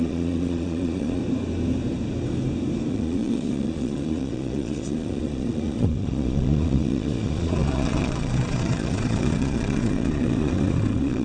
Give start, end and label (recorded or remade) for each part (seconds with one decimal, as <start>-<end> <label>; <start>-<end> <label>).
0.0-1.2 remade; 1.2-2.9 recorded; 2.9-11.2 remade